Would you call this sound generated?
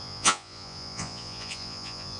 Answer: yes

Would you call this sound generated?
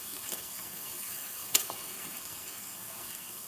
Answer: yes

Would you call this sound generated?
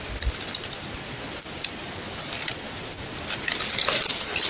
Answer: no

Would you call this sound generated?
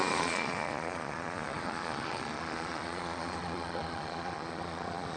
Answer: yes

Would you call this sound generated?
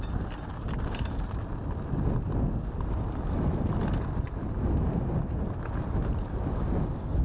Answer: no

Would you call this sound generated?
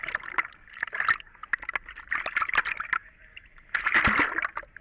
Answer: no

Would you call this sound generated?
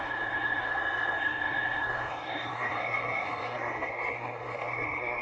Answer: yes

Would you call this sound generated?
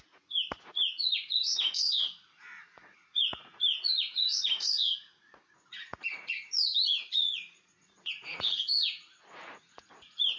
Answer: yes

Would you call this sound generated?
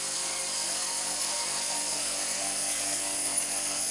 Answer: yes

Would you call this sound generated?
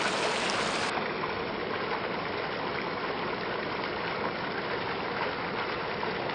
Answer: no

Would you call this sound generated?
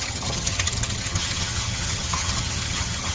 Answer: yes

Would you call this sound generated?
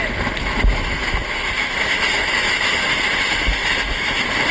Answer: yes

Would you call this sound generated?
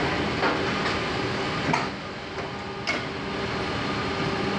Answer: no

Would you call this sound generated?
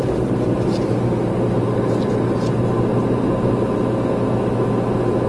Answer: no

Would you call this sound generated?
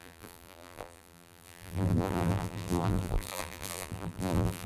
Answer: yes